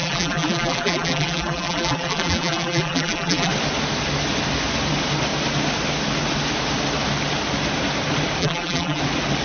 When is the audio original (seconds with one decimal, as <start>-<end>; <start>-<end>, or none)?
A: 3.5-8.4; 9.0-9.4